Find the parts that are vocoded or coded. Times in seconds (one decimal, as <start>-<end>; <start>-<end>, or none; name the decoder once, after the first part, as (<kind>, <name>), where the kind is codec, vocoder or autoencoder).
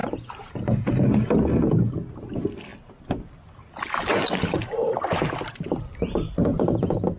0.0-0.9 (vocoder, BigVGAN v2); 6.5-7.2